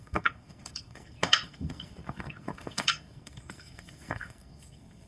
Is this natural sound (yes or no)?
no